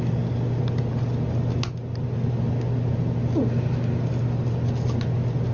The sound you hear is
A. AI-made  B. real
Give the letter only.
B